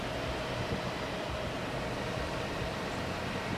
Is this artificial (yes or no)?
no